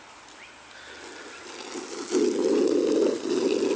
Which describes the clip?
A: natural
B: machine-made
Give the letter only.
A